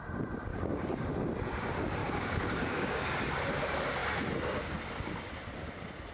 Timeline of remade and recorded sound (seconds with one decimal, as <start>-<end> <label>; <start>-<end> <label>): 0.0-0.5 recorded; 0.5-1.1 remade; 1.1-2.0 recorded; 2.0-3.0 remade; 3.0-6.1 recorded